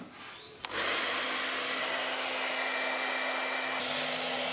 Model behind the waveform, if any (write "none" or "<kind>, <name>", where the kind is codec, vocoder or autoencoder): none